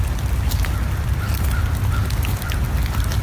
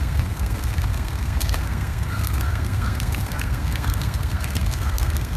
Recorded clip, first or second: first